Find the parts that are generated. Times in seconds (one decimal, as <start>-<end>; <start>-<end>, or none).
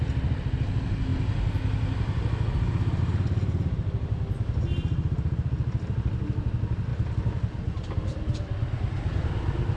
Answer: none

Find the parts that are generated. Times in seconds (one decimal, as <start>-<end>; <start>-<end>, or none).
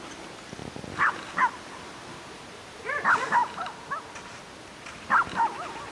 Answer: none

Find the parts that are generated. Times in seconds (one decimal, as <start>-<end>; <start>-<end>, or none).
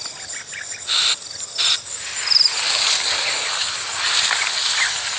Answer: none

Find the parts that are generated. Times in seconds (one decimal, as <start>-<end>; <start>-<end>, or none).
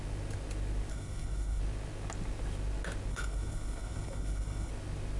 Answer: 0.9-1.6; 3.1-4.7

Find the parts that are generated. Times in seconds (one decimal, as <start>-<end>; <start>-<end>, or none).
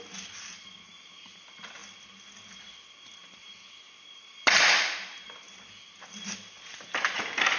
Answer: none